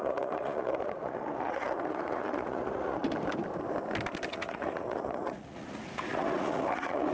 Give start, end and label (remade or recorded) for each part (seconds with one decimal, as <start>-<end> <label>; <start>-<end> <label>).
0.0-3.0 remade; 3.0-4.3 recorded; 4.3-7.1 remade